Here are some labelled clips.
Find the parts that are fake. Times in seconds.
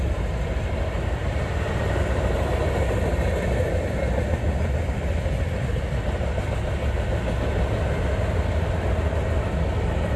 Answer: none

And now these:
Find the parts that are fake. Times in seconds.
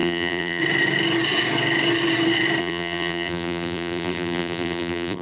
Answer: 0.0-0.6; 2.6-5.2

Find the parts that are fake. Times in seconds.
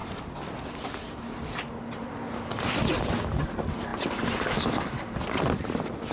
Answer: 0.0-1.7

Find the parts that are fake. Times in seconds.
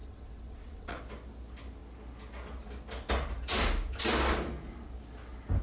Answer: 0.0-1.0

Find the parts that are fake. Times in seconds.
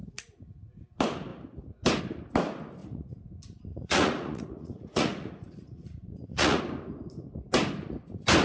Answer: 2.8-3.3; 3.7-6.6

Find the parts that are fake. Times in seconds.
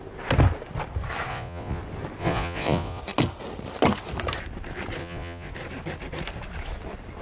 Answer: 1.3-1.8; 2.2-3.0; 5.0-5.5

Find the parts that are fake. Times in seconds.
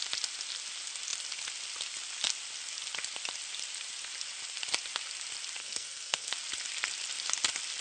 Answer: 5.6-6.3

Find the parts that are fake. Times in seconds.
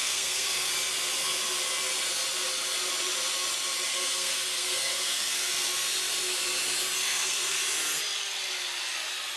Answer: 0.0-0.7; 3.9-5.5; 7.0-7.6